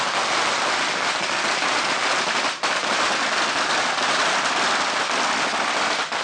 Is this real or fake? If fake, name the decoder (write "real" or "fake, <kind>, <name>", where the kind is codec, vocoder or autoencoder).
real